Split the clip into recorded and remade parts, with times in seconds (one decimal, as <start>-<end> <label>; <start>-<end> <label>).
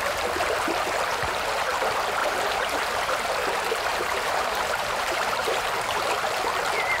0.0-2.2 recorded; 2.2-2.8 remade; 2.8-3.9 recorded; 3.9-5.7 remade; 5.7-7.0 recorded